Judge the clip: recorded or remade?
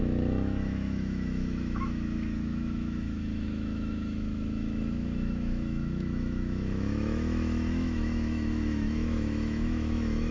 remade